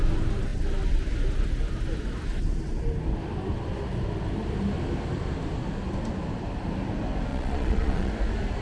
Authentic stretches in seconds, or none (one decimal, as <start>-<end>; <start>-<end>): 0.0-7.3; 8.1-8.6